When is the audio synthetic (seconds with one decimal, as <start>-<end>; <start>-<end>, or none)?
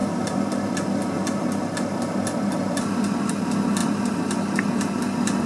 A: 3.8-4.9